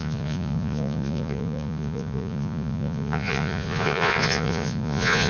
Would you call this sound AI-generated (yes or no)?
yes